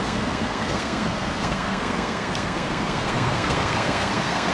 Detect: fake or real fake